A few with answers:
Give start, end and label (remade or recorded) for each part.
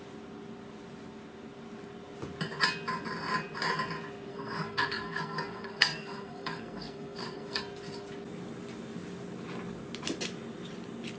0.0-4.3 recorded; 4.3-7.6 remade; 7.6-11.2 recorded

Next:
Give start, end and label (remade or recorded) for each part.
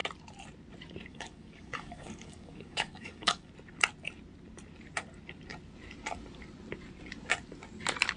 0.0-1.1 recorded; 1.1-3.5 remade; 3.5-8.2 recorded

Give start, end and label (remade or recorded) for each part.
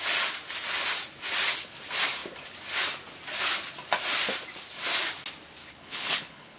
0.0-5.6 recorded; 5.6-6.6 remade